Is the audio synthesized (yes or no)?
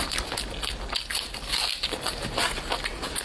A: no